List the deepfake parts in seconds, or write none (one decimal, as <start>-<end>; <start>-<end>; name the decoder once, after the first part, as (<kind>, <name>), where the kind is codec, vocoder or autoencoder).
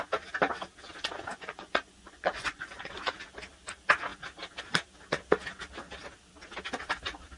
1.3-3.1 (vocoder, Vocos)